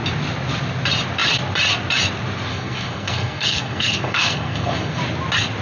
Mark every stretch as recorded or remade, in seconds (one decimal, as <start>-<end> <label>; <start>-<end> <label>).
0.0-2.5 recorded; 2.5-5.0 remade; 5.0-5.6 recorded